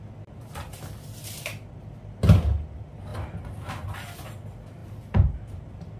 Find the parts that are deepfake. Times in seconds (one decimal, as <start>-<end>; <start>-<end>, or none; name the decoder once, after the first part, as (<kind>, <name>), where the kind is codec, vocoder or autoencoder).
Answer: 4.8-6.0 (vocoder, BigVGAN v2)